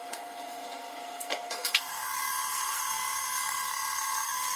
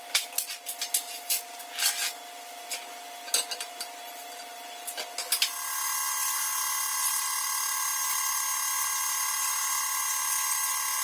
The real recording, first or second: second